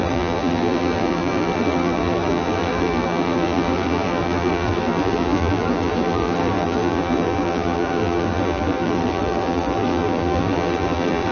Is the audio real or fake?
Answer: fake